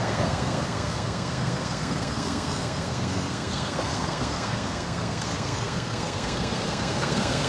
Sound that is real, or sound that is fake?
fake